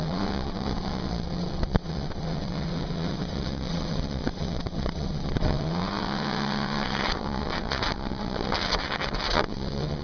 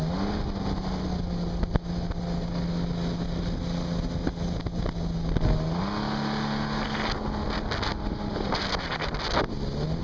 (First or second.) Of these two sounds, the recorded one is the second